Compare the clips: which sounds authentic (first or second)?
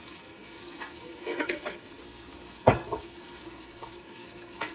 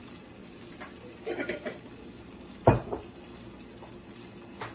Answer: second